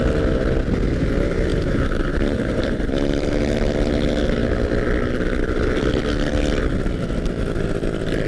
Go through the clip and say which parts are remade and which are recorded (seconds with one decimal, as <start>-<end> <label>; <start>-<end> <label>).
0.0-1.5 recorded; 1.5-3.4 remade; 3.4-8.3 recorded